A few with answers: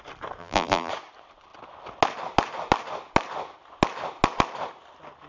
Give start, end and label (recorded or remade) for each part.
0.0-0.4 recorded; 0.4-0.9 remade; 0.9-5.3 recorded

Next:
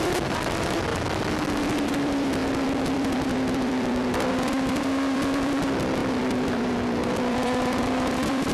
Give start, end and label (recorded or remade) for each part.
0.0-0.9 remade; 0.9-1.6 recorded; 1.6-8.5 remade

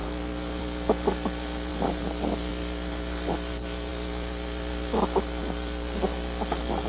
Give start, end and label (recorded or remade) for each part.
0.0-1.7 recorded; 1.7-2.5 remade; 2.5-6.9 recorded

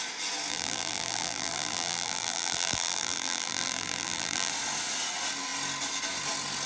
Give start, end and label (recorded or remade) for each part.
0.0-0.5 recorded; 0.5-4.5 remade; 4.5-6.7 recorded

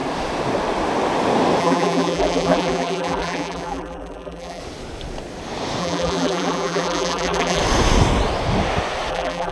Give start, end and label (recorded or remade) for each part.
0.0-1.6 recorded; 1.6-4.6 remade; 4.6-5.8 recorded; 5.8-7.6 remade; 7.6-9.1 recorded; 9.1-9.5 remade

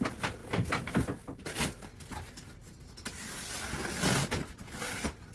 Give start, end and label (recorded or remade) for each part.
0.0-0.4 recorded; 0.4-1.8 remade; 1.8-5.3 recorded

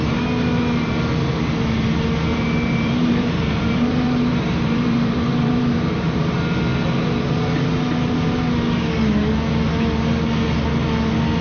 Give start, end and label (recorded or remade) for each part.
0.0-2.3 recorded; 2.3-6.2 remade; 6.2-11.4 recorded